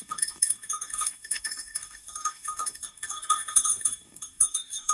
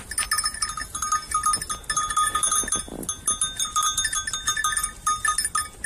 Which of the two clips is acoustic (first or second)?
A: second